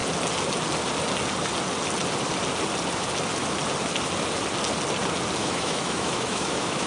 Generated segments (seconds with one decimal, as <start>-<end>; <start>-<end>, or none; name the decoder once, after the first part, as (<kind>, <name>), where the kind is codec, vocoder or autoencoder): 5.4-6.9 (autoencoder, DAC-VAE)